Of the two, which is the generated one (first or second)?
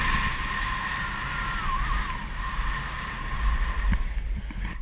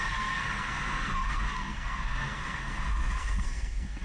second